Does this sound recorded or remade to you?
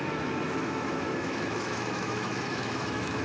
remade